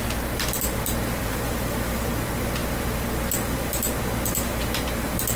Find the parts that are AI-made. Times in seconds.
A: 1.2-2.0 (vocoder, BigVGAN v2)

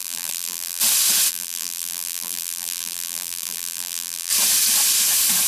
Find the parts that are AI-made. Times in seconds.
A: 0.0-0.8 (vocoder, BigVGAN v2); 1.3-4.3

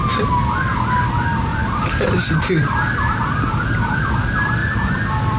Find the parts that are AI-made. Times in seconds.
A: 1.5-4.0 (vocoder, BigVGAN v2); 4.6-5.4

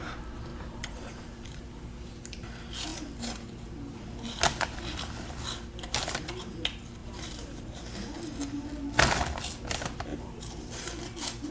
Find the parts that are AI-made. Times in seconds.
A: 0.5-2.5 (vocoder, BigVGAN v2); 7.0-7.8; 10.1-10.8

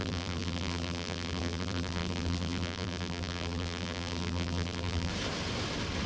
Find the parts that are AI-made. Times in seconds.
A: 0.0-5.1 (vocoder, BigVGAN v2)

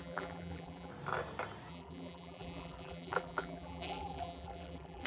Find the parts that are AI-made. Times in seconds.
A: 0.0-0.9 (vocoder, BigVGAN v2); 1.7-5.1

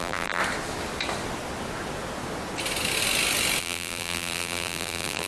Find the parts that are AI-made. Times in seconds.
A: 0.0-0.4 (vocoder, BigVGAN v2); 3.6-5.3

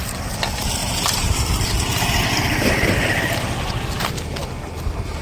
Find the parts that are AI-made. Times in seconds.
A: 0.8-2.2 (vocoder, BigVGAN v2)